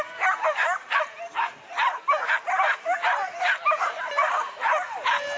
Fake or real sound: real